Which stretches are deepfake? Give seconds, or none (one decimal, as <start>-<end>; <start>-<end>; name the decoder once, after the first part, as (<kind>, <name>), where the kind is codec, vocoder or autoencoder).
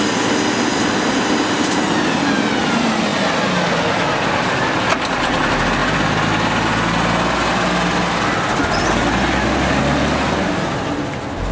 none